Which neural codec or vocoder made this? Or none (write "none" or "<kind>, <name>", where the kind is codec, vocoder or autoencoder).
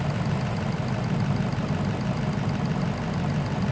none